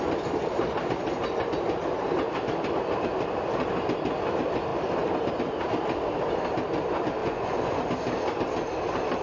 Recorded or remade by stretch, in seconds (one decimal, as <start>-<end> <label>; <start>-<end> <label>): 0.0-7.2 recorded; 7.2-7.8 remade; 7.8-9.2 recorded